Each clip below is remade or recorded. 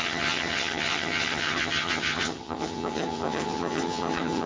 remade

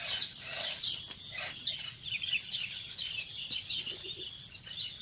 recorded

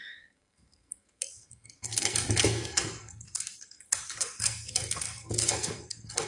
remade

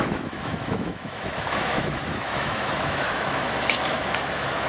remade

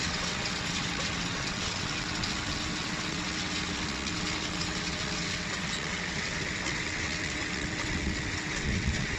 remade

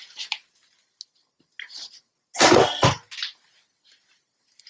recorded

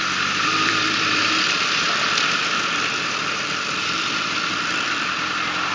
remade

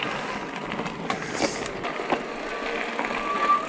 recorded